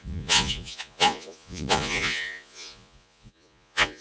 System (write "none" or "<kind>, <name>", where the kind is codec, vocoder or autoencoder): vocoder, Vocos